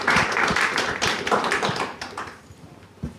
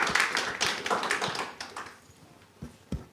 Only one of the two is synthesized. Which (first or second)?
first